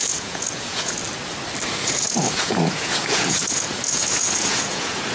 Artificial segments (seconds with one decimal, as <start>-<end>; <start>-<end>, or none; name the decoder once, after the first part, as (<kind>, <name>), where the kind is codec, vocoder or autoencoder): 0.0-1.0 (vocoder, Vocos); 1.7-5.1